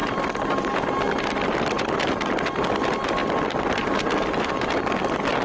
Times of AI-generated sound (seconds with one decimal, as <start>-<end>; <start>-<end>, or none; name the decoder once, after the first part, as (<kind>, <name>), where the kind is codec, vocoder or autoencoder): none